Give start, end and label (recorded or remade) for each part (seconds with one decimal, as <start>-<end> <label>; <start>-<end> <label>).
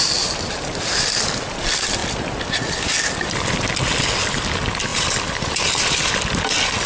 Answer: 0.0-4.9 recorded; 4.9-6.1 remade; 6.1-6.9 recorded